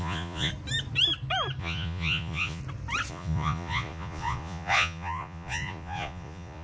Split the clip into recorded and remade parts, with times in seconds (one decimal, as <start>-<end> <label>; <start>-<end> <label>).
0.0-0.5 remade; 0.5-1.6 recorded; 1.6-2.6 remade; 2.6-3.1 recorded; 3.1-6.6 remade